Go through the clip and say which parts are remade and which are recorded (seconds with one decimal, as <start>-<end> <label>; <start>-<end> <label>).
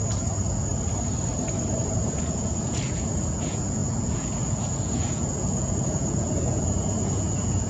0.0-0.7 remade; 0.7-1.9 recorded; 1.9-7.7 remade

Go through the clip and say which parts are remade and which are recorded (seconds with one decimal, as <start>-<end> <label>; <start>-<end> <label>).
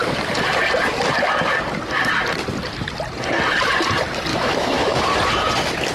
0.0-4.3 recorded; 4.3-5.0 remade; 5.0-5.9 recorded